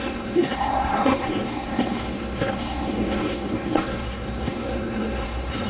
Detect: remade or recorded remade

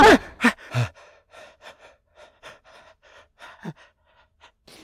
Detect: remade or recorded recorded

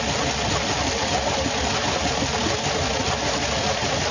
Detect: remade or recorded recorded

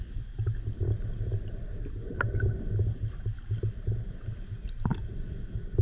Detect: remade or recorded recorded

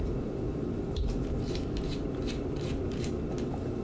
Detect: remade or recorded recorded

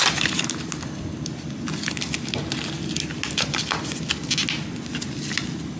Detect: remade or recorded recorded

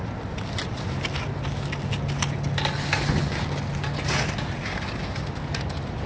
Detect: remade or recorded recorded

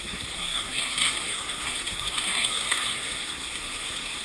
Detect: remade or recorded remade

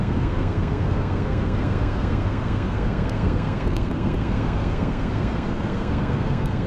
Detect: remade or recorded remade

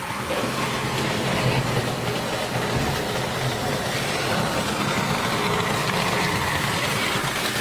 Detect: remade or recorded recorded